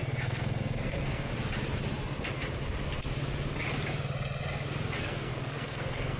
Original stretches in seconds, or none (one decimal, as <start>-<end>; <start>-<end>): 1.3-5.0

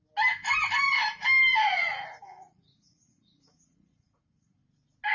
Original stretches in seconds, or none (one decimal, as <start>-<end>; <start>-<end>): 0.0-1.5; 4.6-5.1

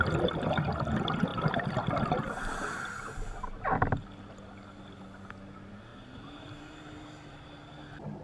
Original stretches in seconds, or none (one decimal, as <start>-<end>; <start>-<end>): 0.0-5.9; 7.6-8.2

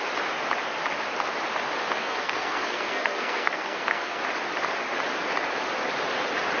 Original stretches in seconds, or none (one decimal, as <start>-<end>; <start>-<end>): 0.0-2.0; 4.2-6.6

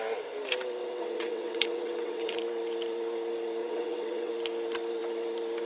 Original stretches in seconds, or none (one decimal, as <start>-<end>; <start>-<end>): 0.0-0.8; 2.4-3.6; 4.3-5.6

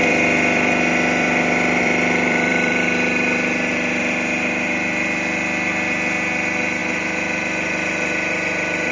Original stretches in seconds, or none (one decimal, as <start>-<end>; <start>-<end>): 4.0-8.9

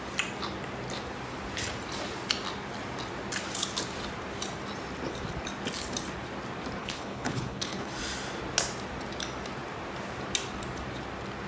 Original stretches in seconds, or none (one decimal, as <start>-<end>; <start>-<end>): 0.0-6.8; 7.9-11.5

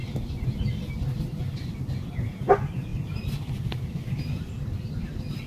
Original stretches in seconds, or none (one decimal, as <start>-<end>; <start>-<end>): 0.0-5.5